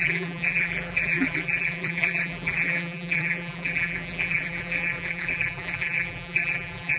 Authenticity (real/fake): fake